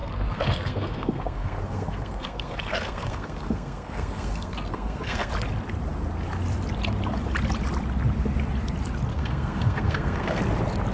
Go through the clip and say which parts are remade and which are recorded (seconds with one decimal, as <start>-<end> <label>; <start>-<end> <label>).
0.0-5.3 remade; 5.3-9.1 recorded; 9.1-10.4 remade; 10.4-10.9 recorded